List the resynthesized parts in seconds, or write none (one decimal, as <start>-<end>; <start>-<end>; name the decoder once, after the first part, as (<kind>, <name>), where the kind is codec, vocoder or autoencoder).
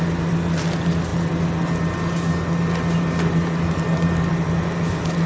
none